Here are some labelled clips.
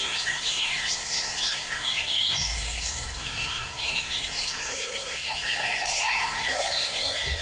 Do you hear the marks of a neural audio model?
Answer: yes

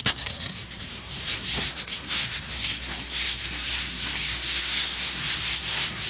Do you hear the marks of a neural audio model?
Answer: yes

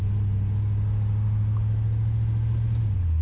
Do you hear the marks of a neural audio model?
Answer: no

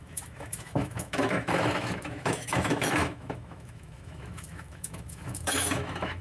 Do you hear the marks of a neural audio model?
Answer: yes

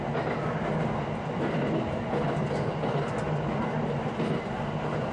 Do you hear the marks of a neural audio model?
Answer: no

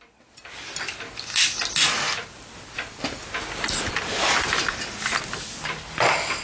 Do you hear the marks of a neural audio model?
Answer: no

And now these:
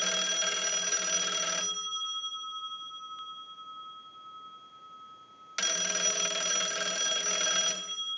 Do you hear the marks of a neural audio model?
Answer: no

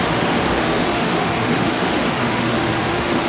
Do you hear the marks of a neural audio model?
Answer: yes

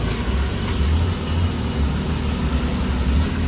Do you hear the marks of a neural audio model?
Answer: no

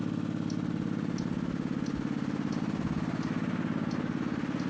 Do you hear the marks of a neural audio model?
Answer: no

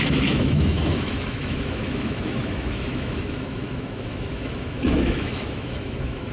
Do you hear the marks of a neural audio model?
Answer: yes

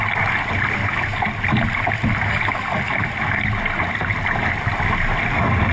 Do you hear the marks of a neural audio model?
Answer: no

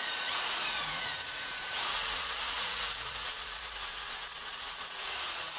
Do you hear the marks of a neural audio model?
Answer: yes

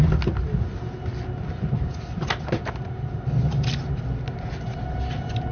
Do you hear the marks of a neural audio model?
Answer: no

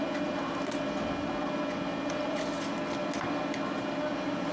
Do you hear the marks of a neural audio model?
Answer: no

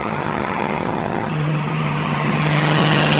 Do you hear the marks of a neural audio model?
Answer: yes